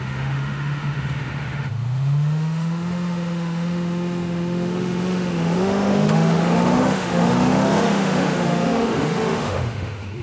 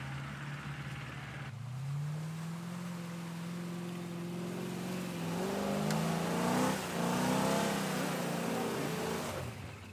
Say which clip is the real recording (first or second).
second